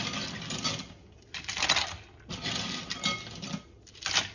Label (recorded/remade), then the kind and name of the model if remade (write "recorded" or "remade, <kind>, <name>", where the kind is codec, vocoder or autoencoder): recorded